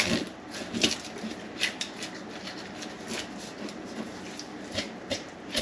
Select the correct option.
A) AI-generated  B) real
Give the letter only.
B